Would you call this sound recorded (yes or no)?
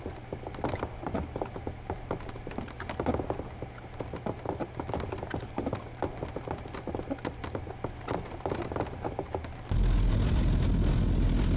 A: yes